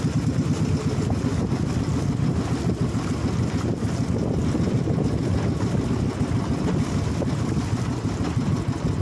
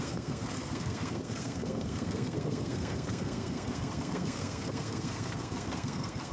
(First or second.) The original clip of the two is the first